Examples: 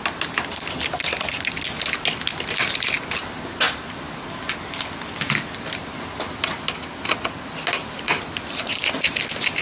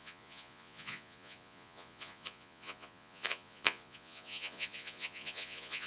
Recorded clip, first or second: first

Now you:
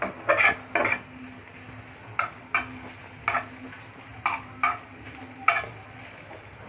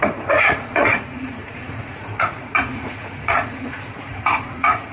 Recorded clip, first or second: first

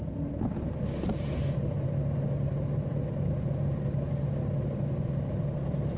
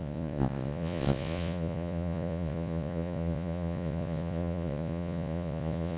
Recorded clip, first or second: first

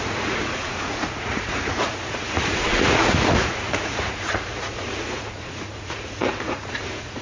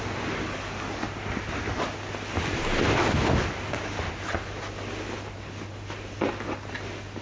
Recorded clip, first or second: second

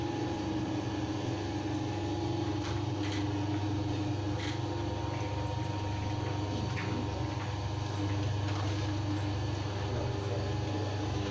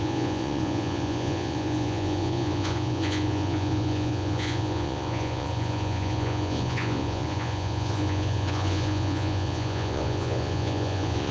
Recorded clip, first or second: first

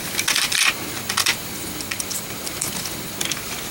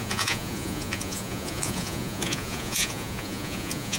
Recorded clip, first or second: first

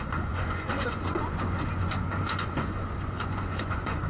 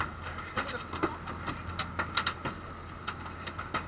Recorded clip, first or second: second